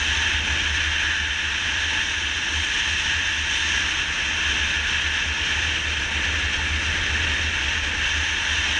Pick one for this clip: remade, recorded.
recorded